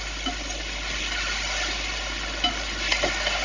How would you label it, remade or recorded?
recorded